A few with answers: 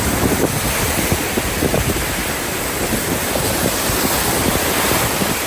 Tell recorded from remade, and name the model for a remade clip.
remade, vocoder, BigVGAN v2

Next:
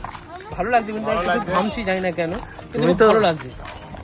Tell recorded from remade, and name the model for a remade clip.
recorded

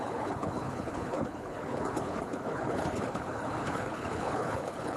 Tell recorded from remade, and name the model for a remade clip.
remade, codec, HILCodec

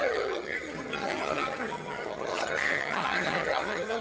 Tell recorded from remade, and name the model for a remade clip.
remade, vocoder, HiFi-GAN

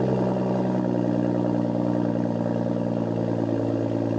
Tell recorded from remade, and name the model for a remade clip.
recorded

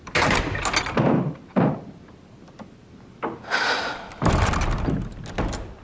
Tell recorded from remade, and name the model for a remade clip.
recorded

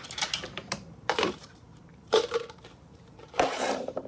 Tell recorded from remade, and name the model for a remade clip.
remade, vocoder, BigVGAN v2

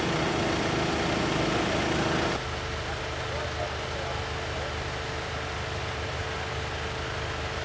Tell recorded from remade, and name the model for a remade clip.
recorded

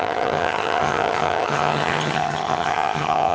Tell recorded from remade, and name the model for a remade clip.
remade, vocoder, HiFi-GAN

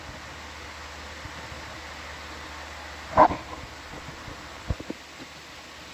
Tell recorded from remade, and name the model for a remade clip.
recorded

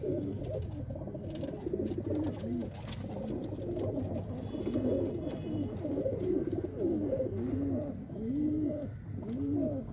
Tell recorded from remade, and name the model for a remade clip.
recorded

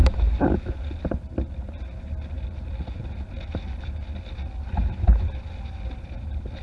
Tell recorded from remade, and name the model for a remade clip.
recorded